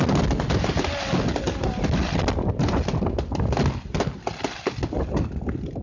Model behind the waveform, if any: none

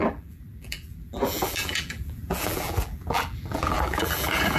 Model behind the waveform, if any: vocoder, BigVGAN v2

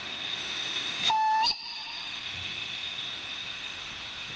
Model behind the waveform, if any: autoencoder, DAC-VAE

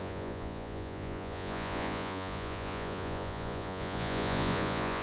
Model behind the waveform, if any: vocoder, Vocos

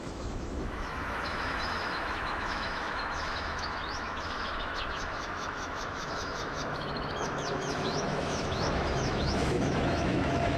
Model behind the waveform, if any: autoencoder, DAC-VAE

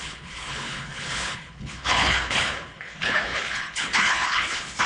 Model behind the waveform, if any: codec, HILCodec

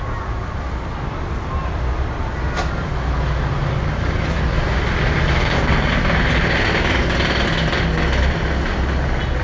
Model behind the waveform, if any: none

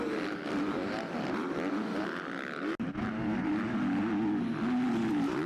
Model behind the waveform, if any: none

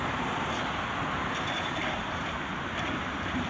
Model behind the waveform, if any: none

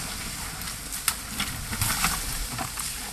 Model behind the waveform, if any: none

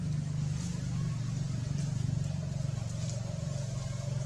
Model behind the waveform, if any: none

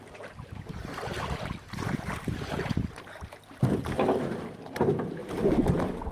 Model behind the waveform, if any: vocoder, BigVGAN v2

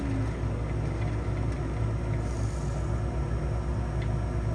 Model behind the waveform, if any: none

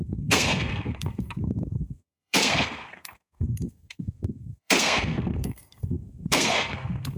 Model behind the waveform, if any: codec, SNAC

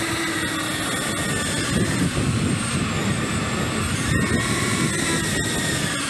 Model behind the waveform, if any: none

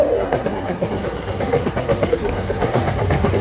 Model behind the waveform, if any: codec, SNAC